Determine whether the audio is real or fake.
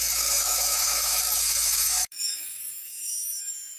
fake